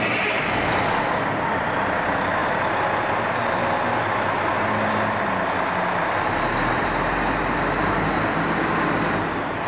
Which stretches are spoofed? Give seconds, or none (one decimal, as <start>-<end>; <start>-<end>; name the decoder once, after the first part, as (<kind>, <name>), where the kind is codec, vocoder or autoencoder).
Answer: none